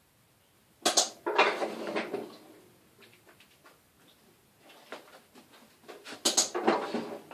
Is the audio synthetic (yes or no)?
no